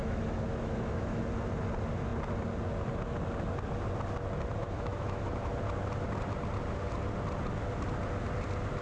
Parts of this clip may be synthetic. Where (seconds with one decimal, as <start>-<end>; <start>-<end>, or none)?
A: 0.0-1.2; 4.6-5.5